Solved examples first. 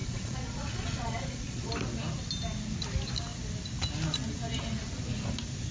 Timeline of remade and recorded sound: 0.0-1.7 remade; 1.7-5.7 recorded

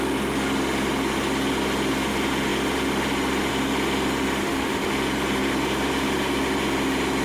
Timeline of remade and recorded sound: 0.0-4.4 recorded; 4.4-4.9 remade; 4.9-7.2 recorded

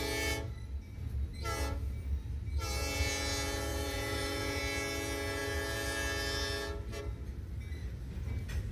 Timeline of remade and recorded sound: 0.0-3.7 recorded; 3.7-4.6 remade; 4.6-8.7 recorded